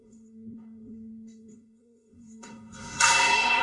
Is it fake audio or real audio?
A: fake